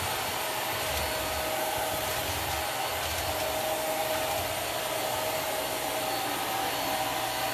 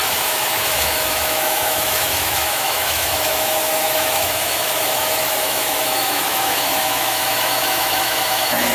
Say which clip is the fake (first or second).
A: second